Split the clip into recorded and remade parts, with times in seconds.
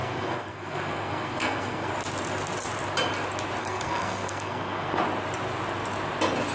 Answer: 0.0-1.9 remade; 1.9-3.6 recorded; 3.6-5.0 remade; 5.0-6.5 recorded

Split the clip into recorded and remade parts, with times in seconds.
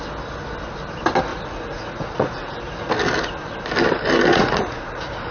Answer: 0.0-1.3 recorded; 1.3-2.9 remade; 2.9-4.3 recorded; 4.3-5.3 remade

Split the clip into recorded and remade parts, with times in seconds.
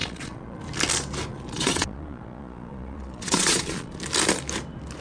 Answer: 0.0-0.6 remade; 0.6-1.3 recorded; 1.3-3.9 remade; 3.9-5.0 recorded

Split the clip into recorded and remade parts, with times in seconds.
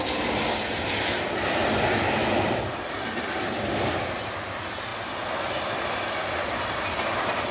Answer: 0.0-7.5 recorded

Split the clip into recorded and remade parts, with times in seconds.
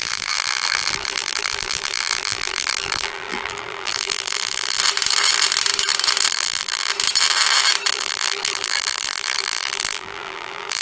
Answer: 0.0-4.8 remade; 4.8-6.3 recorded; 6.3-6.9 remade; 6.9-7.9 recorded; 7.9-10.8 remade